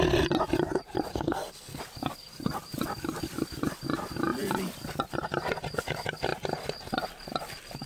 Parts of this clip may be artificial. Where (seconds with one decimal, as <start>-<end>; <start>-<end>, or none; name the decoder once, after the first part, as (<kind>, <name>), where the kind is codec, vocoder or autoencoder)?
1.1-1.8 (codec, SNAC)

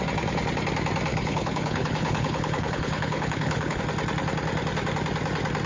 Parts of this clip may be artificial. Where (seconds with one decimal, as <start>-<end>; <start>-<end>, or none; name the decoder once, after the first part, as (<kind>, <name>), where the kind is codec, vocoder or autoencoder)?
1.1-3.8 (codec, HILCodec)

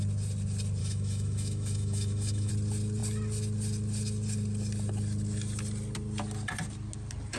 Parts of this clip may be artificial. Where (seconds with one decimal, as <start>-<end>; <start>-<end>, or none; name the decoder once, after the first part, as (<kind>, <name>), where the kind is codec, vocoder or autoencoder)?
0.8-2.5 (autoencoder, DAC-VAE)

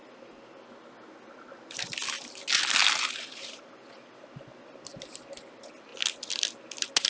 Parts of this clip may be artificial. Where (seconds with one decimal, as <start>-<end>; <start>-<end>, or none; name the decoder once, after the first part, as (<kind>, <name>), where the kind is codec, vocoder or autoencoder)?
none

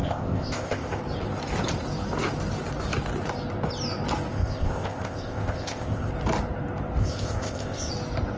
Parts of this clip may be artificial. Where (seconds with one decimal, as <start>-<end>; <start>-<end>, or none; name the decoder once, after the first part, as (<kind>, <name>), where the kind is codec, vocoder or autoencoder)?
0.0-1.0 (codec, ZipCodec); 4.3-6.1; 7.0-7.9

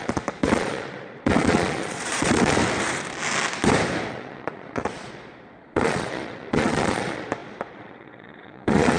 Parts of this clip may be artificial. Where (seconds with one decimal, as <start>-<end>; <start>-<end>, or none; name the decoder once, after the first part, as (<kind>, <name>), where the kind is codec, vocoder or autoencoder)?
0.0-2.6 (vocoder, Vocos); 4.1-9.0

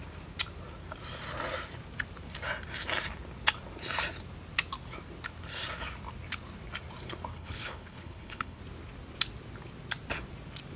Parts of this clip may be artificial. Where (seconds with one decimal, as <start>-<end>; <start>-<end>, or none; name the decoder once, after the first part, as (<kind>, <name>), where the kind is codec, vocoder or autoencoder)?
7.3-8.6 (codec, HILCodec)

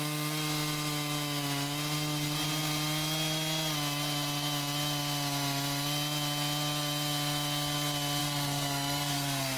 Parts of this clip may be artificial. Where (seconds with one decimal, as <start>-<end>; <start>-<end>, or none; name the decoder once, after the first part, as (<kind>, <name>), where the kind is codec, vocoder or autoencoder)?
8.2-9.6 (codec, SNAC)